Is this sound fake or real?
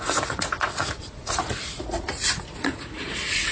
fake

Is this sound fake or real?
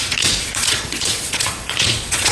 fake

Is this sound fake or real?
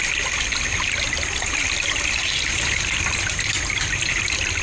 real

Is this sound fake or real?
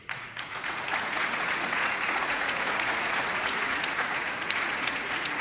fake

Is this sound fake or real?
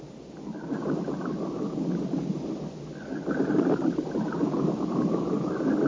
real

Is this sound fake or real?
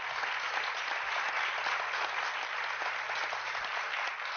real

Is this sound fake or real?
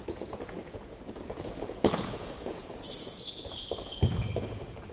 fake